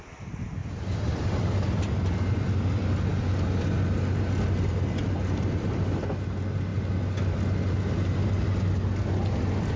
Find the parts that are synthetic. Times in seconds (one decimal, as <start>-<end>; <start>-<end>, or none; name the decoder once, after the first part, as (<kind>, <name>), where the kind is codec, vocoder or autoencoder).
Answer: 0.6-1.9 (vocoder, BigVGAN v2)